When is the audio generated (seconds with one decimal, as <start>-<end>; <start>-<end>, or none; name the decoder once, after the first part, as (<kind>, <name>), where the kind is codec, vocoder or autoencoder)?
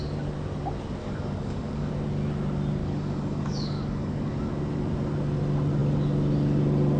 1.0-1.9 (codec, DAC); 2.8-4.5